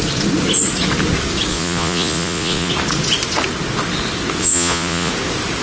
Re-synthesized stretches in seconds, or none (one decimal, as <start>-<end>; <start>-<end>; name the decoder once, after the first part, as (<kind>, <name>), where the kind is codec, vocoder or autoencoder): 1.5-2.7 (vocoder, Vocos); 4.4-5.1